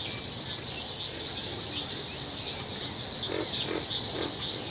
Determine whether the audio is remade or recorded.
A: recorded